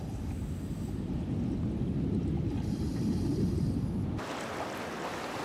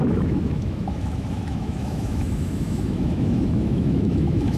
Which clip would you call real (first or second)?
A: first